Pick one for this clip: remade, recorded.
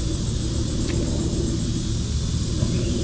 recorded